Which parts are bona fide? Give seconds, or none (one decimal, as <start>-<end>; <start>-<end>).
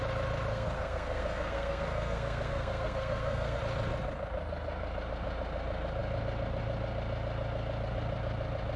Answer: 0.0-0.5; 3.6-8.8